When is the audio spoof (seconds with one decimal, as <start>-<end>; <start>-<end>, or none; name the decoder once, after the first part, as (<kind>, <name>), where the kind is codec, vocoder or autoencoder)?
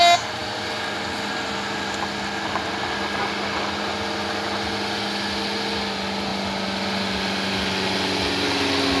none